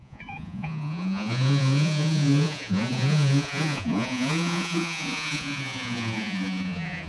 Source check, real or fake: fake